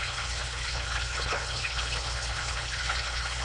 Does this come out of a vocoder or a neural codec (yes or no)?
yes